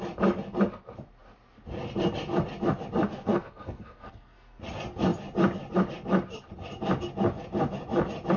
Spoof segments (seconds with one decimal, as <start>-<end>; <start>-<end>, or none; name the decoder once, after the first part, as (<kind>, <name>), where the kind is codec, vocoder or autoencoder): 3.1-4.6 (codec, SNAC)